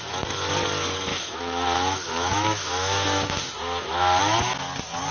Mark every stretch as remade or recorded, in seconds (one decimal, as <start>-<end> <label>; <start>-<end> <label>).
0.0-1.1 recorded; 1.1-4.2 remade; 4.2-5.1 recorded